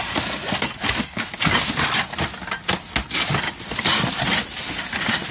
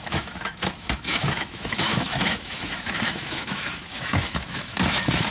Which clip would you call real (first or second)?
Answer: first